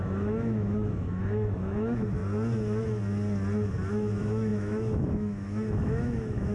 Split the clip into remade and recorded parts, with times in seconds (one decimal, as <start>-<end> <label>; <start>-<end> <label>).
0.0-2.2 remade; 2.2-3.9 recorded; 3.9-6.5 remade